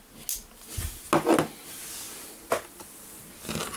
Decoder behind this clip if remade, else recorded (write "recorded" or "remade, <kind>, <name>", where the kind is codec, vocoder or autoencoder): recorded